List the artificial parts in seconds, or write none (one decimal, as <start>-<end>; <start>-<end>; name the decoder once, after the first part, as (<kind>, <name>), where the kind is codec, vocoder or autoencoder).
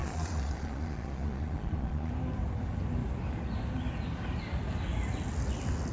0.0-2.1 (vocoder, Vocos)